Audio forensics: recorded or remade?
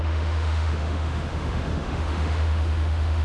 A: remade